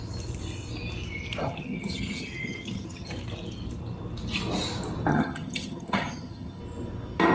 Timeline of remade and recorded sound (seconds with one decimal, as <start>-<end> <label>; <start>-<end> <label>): 0.0-1.4 recorded; 1.4-3.1 remade; 3.1-5.1 recorded; 5.1-6.6 remade; 6.6-7.3 recorded